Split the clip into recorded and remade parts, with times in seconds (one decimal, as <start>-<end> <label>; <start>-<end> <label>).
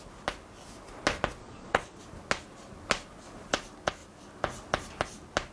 0.0-1.4 recorded; 1.4-2.0 remade; 2.0-5.5 recorded